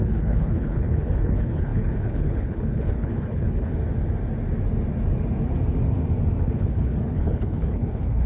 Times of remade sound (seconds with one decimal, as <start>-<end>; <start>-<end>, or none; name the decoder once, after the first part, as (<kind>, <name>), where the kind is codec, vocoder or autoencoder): 0.0-3.7 (codec, HILCodec); 6.4-8.3